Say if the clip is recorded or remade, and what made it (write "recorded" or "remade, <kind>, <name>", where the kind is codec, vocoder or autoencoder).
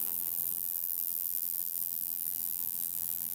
remade, vocoder, BigVGAN v2